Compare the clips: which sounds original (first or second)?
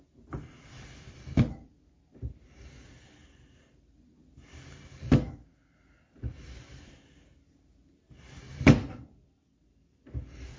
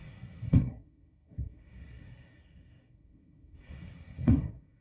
first